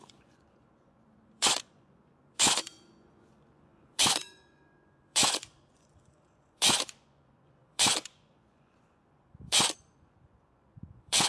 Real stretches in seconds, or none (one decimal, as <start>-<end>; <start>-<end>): none